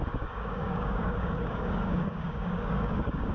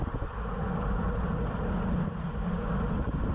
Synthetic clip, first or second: first